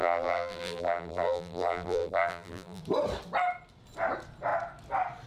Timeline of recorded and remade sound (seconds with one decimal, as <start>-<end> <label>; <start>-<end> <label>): 0.0-2.8 remade; 2.8-5.3 recorded